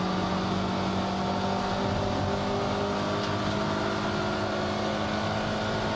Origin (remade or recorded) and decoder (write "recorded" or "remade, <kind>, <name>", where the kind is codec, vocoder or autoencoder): recorded